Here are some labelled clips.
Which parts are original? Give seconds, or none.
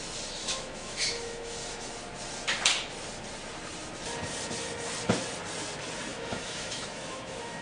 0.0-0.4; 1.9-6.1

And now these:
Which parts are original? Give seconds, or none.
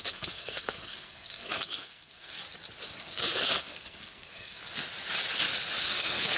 2.4-3.0; 4.6-5.8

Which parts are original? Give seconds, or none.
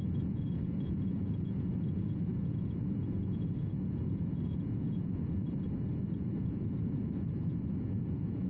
5.4-6.2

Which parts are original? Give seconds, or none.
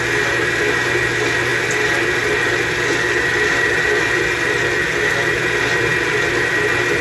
0.0-7.0